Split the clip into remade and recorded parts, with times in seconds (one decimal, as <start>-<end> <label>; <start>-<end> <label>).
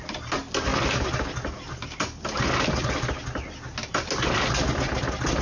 0.0-5.4 recorded